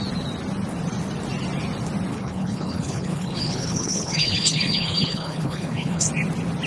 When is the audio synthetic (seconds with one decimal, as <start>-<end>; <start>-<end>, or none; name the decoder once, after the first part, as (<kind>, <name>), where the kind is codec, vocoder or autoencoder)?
2.1-6.1 (codec, HILCodec)